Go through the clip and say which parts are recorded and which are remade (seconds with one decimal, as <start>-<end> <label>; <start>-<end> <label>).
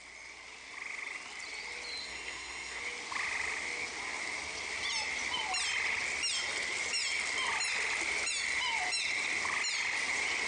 0.0-2.0 recorded; 2.0-2.8 remade; 2.8-10.5 recorded